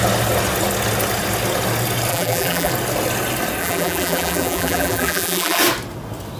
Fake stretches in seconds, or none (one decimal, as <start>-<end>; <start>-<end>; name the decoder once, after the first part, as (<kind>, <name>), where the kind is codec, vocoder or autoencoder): 2.1-2.7 (vocoder, BigVGAN v2); 3.6-5.6